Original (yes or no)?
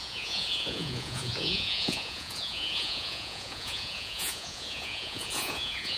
no